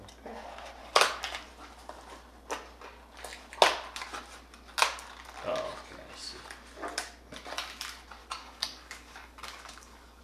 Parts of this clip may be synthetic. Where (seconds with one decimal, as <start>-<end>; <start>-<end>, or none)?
0.8-1.5; 8.2-10.2